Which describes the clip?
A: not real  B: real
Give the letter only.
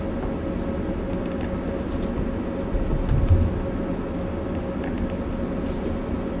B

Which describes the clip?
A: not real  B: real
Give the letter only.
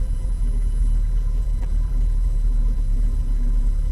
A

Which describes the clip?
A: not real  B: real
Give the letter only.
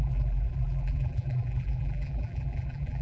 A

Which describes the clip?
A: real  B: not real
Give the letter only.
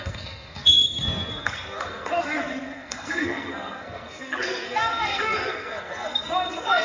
B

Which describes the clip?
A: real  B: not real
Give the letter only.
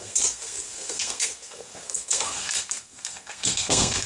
B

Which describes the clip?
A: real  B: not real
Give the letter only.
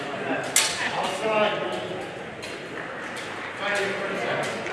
A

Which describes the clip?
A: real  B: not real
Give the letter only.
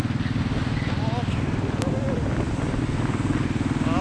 A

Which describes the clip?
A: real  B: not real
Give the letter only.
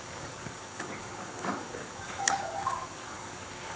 B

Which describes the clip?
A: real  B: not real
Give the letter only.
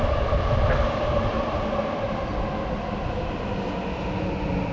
A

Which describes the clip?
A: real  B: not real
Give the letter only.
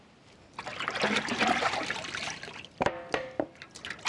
A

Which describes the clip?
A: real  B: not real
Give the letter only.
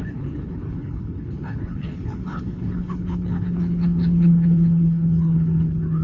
B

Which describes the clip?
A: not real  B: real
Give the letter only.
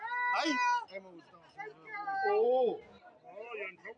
B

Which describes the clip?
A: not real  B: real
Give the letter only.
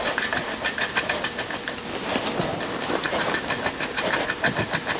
B